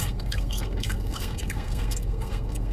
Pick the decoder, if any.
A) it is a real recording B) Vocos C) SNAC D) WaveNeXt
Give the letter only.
C